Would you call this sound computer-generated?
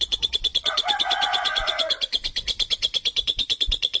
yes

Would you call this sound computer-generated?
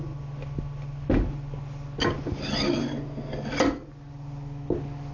no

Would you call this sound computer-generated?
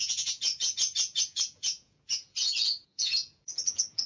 yes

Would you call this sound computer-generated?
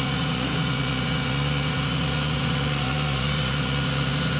yes